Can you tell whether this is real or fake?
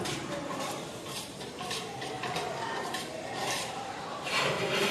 fake